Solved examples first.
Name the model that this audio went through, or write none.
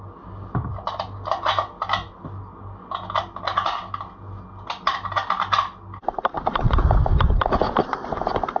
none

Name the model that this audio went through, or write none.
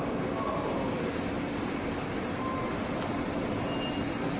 none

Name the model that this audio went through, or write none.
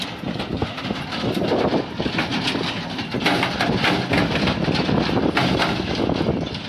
none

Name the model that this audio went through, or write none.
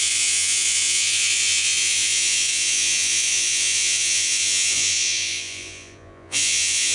vocoder, Vocos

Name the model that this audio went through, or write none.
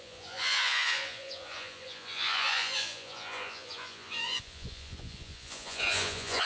vocoder, Vocos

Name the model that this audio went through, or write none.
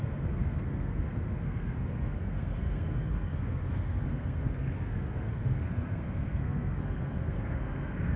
codec, SNAC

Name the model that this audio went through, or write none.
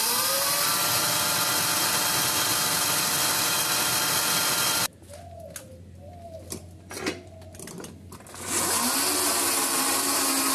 none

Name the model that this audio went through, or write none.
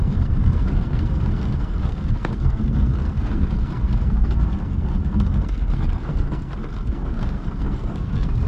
codec, SNAC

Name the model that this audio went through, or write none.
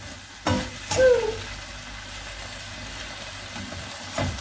none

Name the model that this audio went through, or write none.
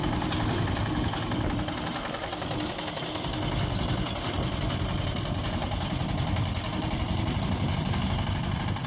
none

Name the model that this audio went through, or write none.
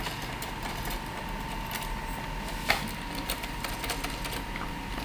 none